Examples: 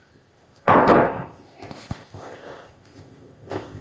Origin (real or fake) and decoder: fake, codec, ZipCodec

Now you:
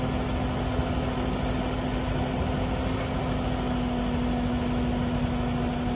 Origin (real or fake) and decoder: real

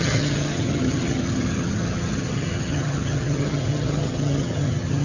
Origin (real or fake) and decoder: fake, vocoder, HiFi-GAN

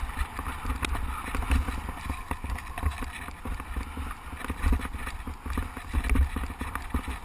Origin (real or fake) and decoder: real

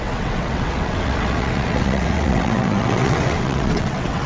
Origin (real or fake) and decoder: fake, vocoder, WaveNeXt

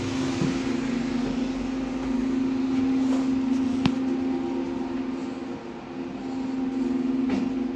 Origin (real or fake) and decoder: real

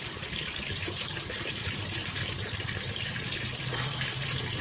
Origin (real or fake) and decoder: fake, vocoder, BigVGAN v2